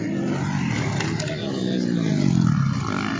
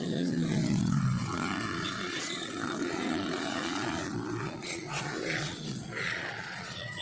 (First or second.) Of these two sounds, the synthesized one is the second